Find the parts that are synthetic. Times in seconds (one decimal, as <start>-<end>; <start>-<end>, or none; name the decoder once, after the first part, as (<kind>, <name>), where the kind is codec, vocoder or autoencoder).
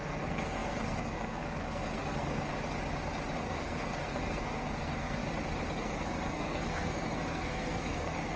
0.0-2.5 (codec, SNAC); 3.4-5.2; 5.8-8.4